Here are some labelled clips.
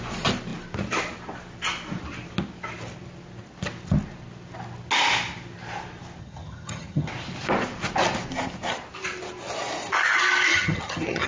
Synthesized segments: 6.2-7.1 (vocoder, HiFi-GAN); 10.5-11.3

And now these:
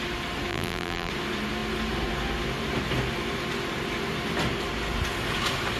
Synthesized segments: 0.5-1.1 (vocoder, BigVGAN v2)

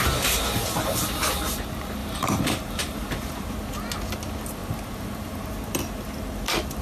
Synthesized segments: 2.0-3.5 (vocoder, BigVGAN v2); 4.6-5.5